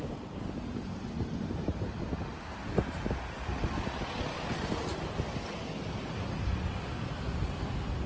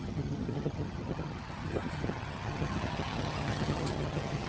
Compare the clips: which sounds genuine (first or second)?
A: first